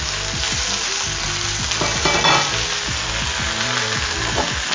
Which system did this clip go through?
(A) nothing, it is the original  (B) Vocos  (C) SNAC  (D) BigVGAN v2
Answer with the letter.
A